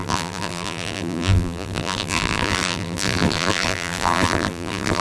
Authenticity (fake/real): fake